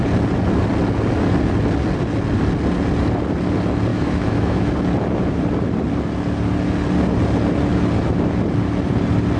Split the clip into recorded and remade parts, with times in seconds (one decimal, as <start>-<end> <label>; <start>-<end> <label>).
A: 0.0-3.9 recorded; 3.9-4.7 remade; 4.7-9.4 recorded